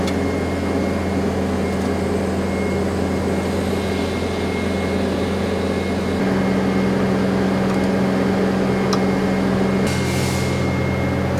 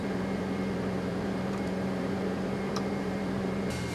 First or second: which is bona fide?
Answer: first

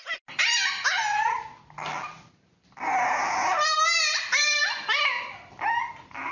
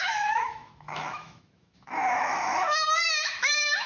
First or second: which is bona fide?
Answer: first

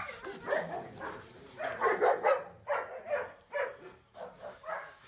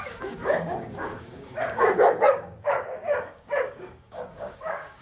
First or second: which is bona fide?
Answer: first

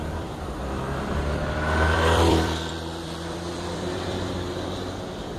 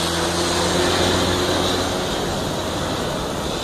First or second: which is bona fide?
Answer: second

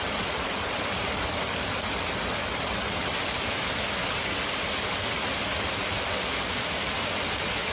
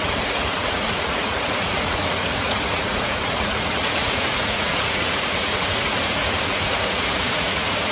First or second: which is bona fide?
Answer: first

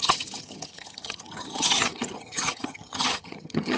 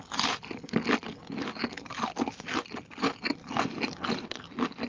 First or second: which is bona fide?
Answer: second